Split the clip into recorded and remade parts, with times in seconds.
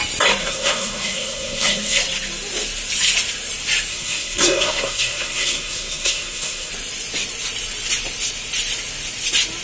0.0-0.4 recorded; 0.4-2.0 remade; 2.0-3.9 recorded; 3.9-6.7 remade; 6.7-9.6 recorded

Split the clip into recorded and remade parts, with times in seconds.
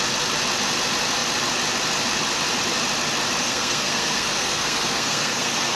0.0-3.4 recorded; 3.4-5.8 remade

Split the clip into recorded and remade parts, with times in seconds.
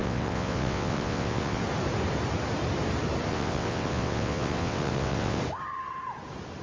0.0-1.6 remade; 1.6-3.3 recorded; 3.3-5.4 remade; 5.4-6.6 recorded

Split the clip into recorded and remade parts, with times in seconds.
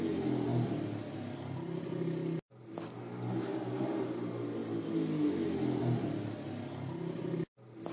0.0-7.9 recorded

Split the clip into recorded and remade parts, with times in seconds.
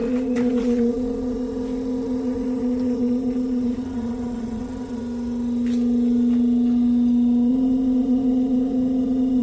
0.0-5.0 remade; 5.0-7.5 recorded; 7.5-9.4 remade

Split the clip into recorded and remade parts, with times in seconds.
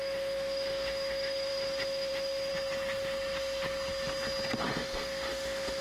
0.0-2.5 remade; 2.5-4.6 recorded; 4.6-5.8 remade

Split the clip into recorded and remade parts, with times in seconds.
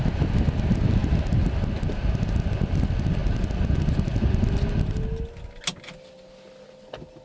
0.0-7.2 recorded